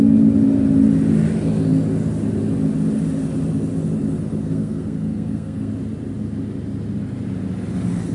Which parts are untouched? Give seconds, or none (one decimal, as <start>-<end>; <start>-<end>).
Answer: 0.0-4.4; 5.7-8.1